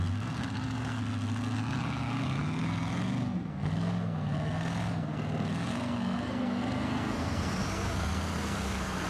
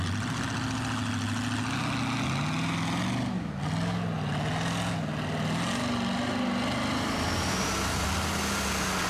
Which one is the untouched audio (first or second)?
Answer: second